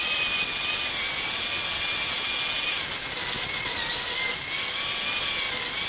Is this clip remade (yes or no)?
no